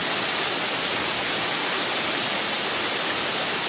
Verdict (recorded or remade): recorded